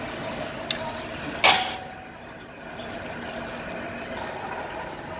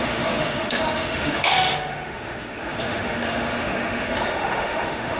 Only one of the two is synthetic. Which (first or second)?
second